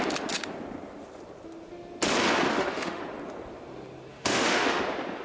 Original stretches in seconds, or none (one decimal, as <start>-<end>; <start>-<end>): 0.0-2.5; 3.0-4.1; 4.8-5.2